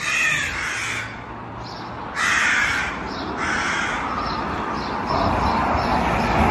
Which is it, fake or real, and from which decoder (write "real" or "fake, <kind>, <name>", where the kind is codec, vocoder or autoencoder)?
real